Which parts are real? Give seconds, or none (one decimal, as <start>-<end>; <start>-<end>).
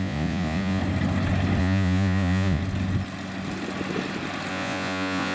0.8-1.6; 2.6-4.5